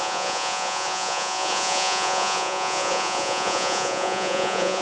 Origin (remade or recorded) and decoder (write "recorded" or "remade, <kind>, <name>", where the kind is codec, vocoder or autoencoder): remade, vocoder, Vocos